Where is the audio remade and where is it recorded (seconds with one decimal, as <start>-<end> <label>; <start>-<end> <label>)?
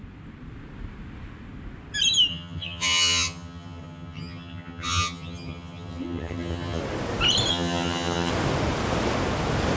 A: 0.0-2.3 recorded; 2.3-6.8 remade; 6.8-7.5 recorded; 7.5-8.3 remade; 8.3-9.8 recorded